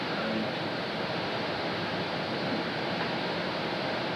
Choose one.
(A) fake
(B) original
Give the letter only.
B